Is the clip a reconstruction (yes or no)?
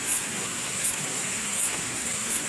yes